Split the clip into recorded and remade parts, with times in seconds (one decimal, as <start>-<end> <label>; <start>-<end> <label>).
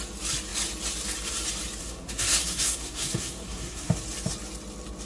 0.0-1.8 recorded; 1.8-3.9 remade; 3.9-5.1 recorded